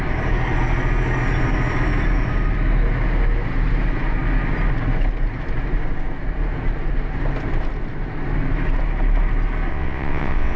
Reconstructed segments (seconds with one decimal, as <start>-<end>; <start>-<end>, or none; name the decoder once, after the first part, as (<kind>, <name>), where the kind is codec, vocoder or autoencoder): 9.7-10.6 (vocoder, WaveNeXt)